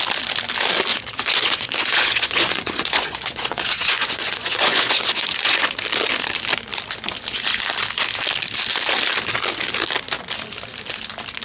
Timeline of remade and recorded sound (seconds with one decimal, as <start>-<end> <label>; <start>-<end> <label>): 0.0-0.9 recorded; 0.9-5.7 remade; 5.7-11.4 recorded